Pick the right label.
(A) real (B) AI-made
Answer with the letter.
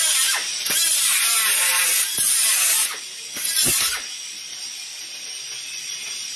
A